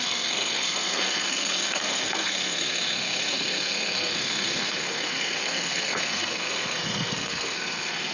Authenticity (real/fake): fake